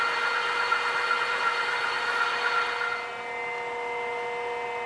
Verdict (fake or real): real